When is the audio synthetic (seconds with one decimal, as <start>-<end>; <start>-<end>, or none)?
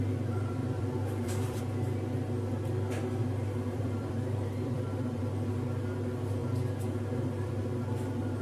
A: 0.6-1.6; 3.2-5.2; 6.4-7.5